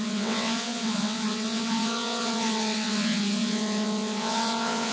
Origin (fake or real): fake